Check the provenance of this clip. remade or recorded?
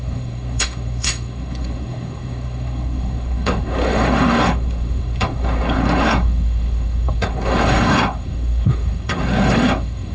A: remade